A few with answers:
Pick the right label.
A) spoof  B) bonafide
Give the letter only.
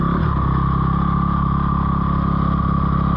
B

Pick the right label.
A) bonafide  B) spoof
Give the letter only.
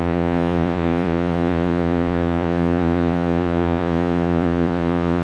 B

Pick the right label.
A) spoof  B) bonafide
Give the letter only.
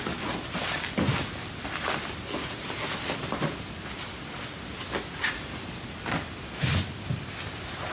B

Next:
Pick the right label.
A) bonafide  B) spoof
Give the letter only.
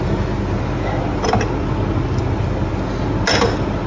A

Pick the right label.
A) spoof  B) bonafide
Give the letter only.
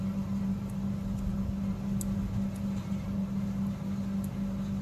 B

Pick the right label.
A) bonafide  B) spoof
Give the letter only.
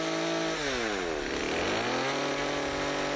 A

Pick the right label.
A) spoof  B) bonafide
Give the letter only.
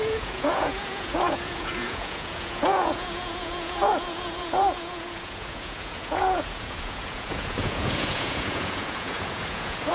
A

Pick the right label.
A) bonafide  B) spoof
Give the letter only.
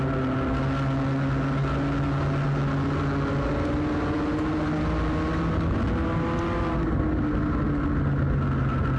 A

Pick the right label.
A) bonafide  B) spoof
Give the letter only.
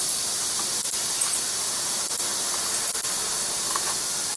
A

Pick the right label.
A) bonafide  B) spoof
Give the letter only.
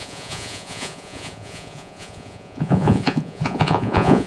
B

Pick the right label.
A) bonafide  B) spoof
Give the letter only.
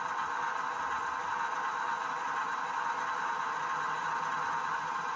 A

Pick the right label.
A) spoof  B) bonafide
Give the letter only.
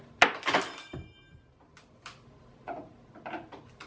B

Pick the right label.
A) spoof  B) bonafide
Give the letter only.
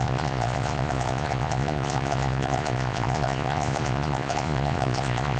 A